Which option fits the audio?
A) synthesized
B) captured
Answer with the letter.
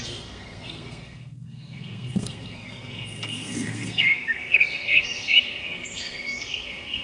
A